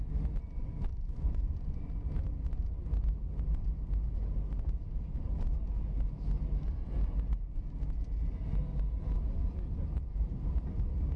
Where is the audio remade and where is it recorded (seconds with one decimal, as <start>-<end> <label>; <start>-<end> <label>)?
0.0-0.9 recorded; 0.9-1.9 remade; 1.9-11.2 recorded